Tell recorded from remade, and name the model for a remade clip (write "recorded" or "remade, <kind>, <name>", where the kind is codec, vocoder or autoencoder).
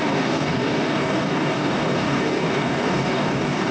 remade, codec, DAC